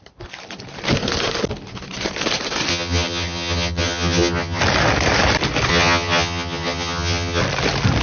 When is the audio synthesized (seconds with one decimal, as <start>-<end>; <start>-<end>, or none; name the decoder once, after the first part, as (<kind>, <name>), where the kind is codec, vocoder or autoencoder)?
2.7-4.6 (vocoder, HiFi-GAN); 5.7-7.4

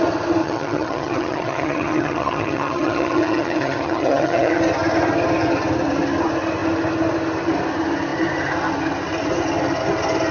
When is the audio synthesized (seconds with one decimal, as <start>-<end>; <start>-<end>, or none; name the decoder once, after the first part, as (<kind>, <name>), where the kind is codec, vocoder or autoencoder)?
0.4-4.6 (vocoder, HiFi-GAN)

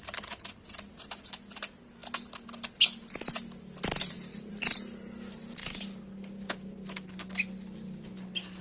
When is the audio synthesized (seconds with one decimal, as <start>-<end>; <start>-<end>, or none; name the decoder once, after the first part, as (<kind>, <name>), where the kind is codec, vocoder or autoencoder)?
none

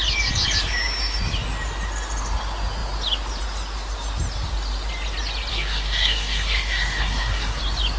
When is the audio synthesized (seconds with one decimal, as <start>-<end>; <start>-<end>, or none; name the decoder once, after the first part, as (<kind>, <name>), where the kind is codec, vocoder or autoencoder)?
5.5-7.6 (codec, SNAC)

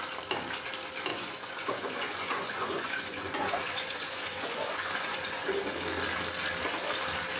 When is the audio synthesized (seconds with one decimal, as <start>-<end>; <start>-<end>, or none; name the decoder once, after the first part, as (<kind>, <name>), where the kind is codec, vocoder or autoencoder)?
1.1-5.5 (vocoder, Vocos)

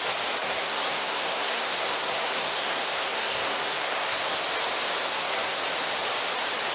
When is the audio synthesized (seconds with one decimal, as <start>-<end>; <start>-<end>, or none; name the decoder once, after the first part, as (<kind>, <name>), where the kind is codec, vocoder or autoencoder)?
0.4-4.4 (codec, SNAC); 5.0-5.6